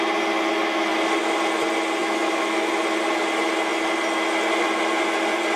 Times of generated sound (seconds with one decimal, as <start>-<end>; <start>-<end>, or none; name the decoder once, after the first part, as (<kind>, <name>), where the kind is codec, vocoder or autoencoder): 2.0-2.7 (autoencoder, DAC-VAE)